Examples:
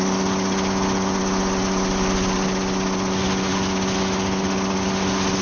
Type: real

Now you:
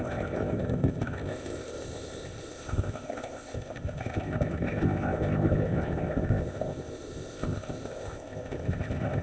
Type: fake